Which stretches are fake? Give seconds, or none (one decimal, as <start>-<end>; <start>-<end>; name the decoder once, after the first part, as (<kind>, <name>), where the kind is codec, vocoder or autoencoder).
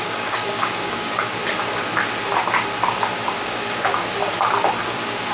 0.0-1.4 (codec, DAC); 3.3-4.2; 4.8-5.3